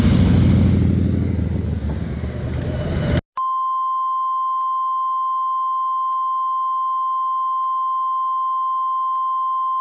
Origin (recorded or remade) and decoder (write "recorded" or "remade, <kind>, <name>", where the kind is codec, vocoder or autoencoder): recorded